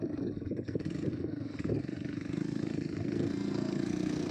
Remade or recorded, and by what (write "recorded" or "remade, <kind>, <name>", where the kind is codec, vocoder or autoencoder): remade, codec, SNAC